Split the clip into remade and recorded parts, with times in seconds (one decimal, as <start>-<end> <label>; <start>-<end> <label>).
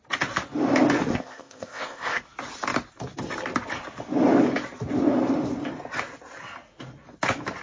0.0-1.1 recorded; 1.1-2.2 remade; 2.2-7.6 recorded